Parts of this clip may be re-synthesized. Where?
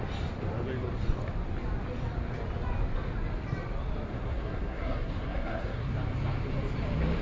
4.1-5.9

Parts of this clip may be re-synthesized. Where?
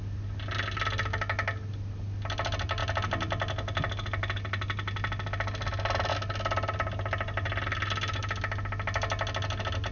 none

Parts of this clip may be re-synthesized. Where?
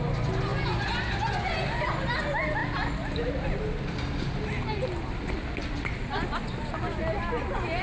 none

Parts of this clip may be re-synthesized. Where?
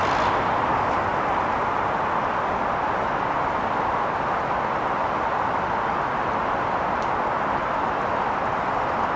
none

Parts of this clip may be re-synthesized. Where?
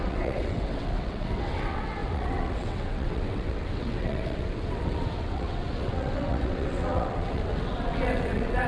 0.0-8.7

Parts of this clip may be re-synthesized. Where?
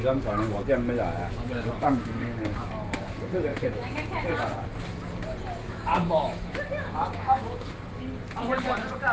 1.2-2.7; 3.5-4.4; 5.6-7.7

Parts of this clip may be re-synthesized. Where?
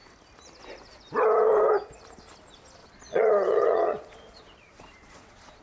2.8-5.6